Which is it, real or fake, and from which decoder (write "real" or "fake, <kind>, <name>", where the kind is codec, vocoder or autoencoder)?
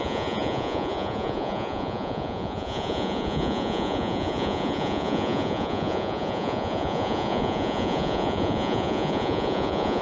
fake, vocoder, Vocos